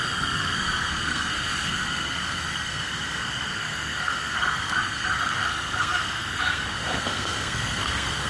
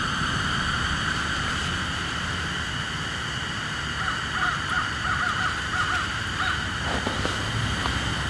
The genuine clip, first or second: second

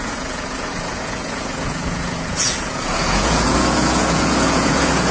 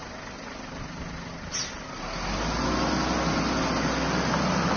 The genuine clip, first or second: second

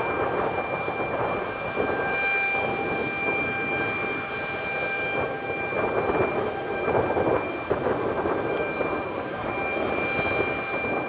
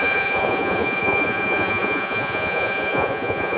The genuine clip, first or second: first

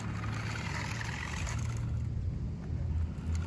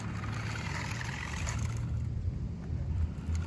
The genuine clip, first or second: first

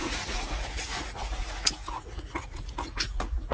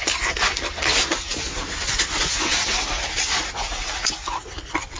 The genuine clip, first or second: second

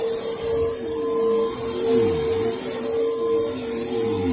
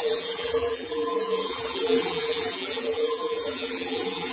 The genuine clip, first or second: first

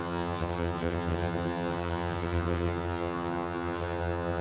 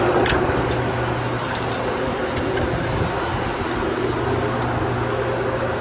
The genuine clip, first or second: second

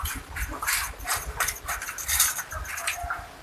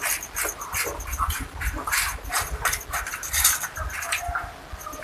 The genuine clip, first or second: second